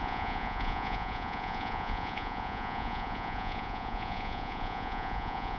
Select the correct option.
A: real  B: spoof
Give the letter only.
B